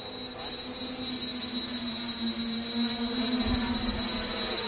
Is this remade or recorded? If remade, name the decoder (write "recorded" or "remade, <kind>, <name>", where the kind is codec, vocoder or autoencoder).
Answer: recorded